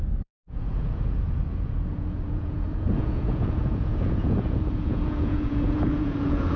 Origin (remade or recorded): remade